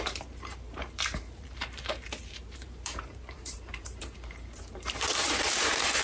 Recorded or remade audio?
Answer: remade